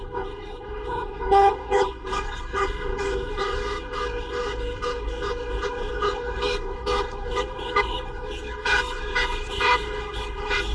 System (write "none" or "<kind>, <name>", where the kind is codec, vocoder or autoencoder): codec, HILCodec